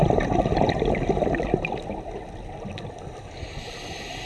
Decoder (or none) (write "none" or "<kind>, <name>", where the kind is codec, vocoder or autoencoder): none